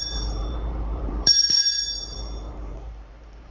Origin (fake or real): fake